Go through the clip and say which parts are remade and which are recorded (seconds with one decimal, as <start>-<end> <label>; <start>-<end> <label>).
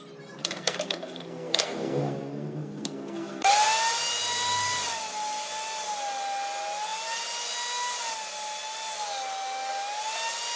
0.0-0.4 recorded; 0.4-3.5 remade; 3.5-10.6 recorded